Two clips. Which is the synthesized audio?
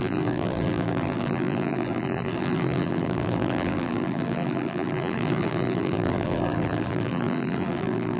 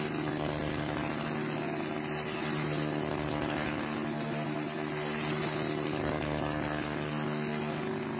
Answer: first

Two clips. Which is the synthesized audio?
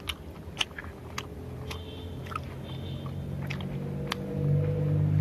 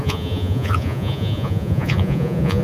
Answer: second